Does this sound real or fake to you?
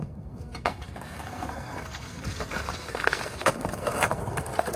fake